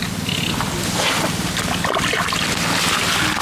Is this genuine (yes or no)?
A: yes